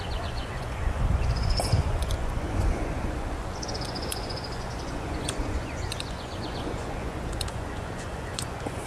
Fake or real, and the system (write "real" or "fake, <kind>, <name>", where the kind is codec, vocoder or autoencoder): fake, vocoder, Vocos